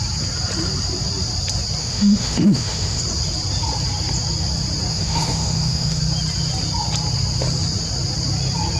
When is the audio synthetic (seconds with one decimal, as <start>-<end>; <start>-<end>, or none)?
1.8-3.0; 4.9-6.0

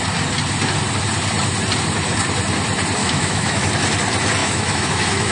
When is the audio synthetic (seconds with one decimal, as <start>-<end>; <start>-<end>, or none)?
3.0-3.7; 4.4-5.3

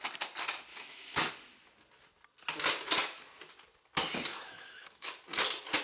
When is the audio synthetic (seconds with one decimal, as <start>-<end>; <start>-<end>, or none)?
0.7-1.3; 4.3-5.1

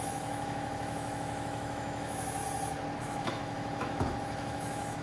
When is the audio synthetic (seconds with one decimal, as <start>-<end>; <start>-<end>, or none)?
0.0-2.4; 3.0-5.0